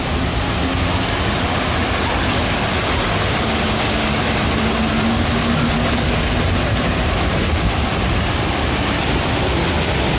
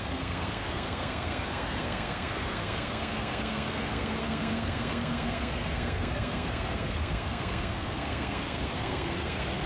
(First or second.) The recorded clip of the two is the first